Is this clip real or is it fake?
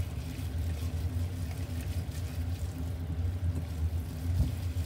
real